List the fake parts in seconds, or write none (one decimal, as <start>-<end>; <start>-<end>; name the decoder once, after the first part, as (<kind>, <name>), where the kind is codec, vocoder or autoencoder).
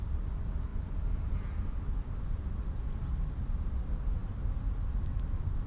none